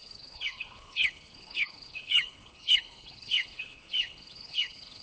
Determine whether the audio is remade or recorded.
remade